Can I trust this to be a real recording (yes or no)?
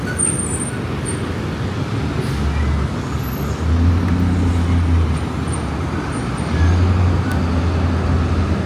yes